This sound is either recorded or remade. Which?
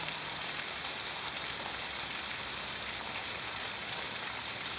remade